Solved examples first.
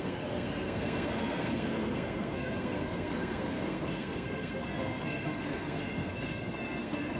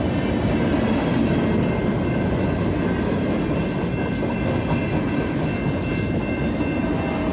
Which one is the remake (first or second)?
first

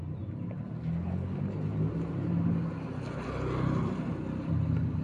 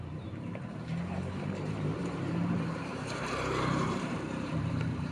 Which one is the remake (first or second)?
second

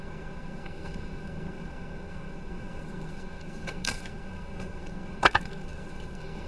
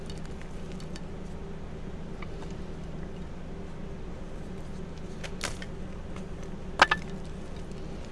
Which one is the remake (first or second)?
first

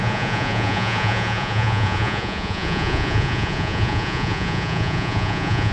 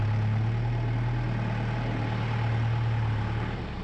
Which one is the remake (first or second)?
first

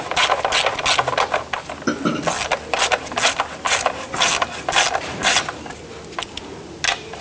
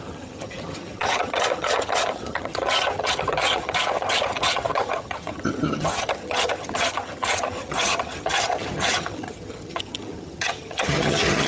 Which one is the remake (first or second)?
second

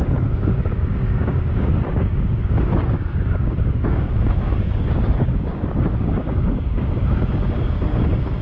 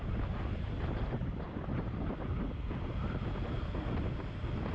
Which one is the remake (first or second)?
first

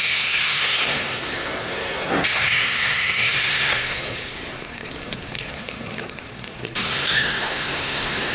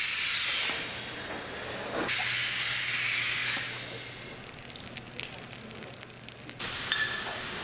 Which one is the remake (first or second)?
first